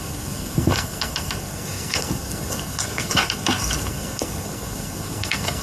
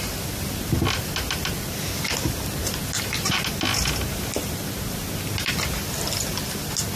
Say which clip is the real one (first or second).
second